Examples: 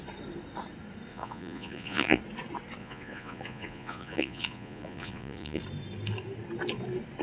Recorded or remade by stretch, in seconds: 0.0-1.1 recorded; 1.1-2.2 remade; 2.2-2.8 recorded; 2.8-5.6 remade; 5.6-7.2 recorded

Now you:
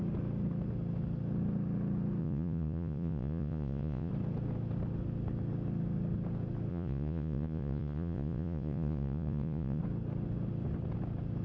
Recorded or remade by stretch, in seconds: 0.0-2.2 recorded; 2.2-4.1 remade; 4.1-6.7 recorded; 6.7-9.8 remade; 9.8-11.4 recorded

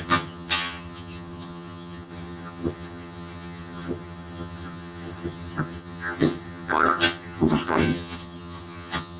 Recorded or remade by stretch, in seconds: 0.0-9.2 remade

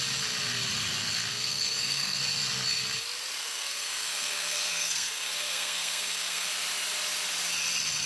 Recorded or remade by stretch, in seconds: 0.0-1.3 recorded; 1.3-2.2 remade; 2.2-3.4 recorded; 3.4-6.5 remade; 6.5-8.1 recorded

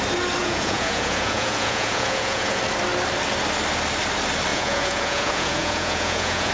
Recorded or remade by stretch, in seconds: 0.0-0.4 recorded; 0.4-2.6 remade; 2.6-4.5 recorded; 4.5-6.5 remade

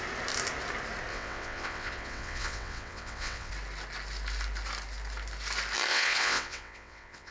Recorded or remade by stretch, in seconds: 0.0-1.1 recorded; 1.1-3.5 remade; 3.5-5.9 recorded; 5.9-7.3 remade